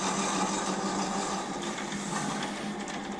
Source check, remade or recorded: recorded